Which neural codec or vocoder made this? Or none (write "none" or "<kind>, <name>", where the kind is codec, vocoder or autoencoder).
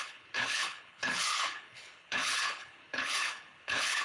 codec, HILCodec